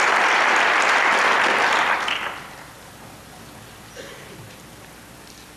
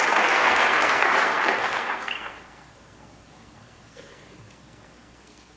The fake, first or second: second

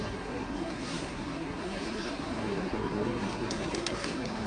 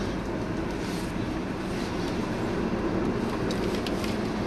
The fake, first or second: first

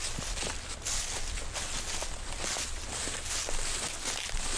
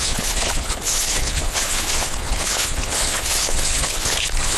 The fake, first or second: second